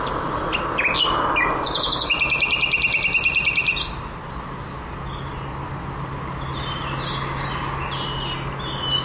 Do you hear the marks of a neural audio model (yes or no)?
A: no